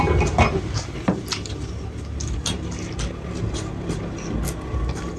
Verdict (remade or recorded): recorded